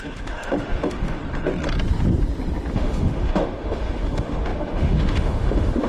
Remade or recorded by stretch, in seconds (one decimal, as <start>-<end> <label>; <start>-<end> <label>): 0.0-1.2 remade; 1.2-2.7 recorded; 2.7-5.9 remade